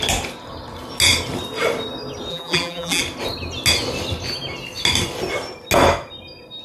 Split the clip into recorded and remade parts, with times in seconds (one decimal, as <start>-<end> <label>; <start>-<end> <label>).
0.0-2.3 recorded; 2.3-3.0 remade; 3.0-6.6 recorded